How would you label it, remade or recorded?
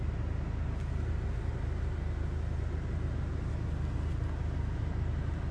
recorded